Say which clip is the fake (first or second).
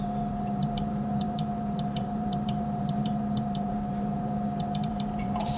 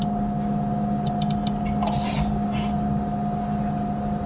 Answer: first